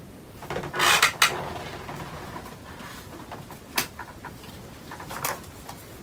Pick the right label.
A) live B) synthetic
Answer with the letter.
A